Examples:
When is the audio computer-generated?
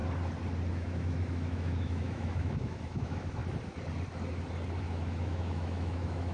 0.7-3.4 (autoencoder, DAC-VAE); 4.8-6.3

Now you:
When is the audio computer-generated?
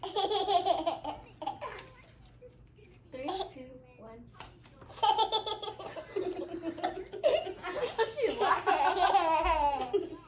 2.8-3.5 (codec, DAC)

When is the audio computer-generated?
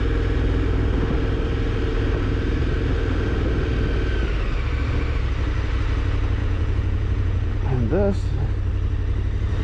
6.4-7.5 (vocoder, Vocos)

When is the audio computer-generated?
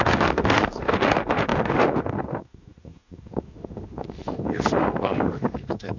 0.0-6.0 (autoencoder, DAC-VAE)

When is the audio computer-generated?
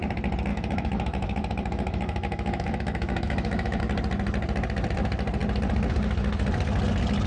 0.5-3.8 (autoencoder, DAC-VAE)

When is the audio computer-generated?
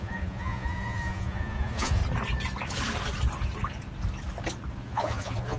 0.0-2.0 (vocoder, Vocos); 4.7-5.6